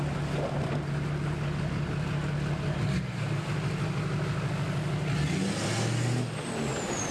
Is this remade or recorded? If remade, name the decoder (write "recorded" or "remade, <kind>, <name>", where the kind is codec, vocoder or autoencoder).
recorded